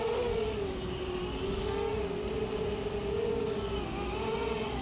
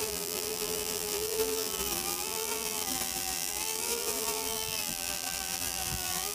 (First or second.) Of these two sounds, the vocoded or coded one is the second